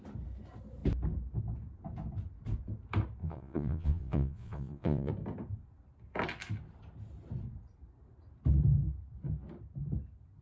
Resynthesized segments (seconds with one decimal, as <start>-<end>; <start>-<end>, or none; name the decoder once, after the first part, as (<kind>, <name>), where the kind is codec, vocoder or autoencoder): 3.2-5.1 (vocoder, Vocos)